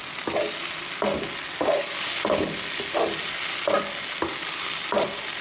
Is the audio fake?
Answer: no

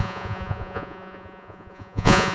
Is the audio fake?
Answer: yes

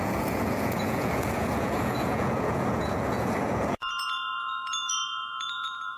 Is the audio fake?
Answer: yes